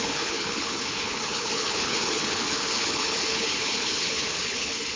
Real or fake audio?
fake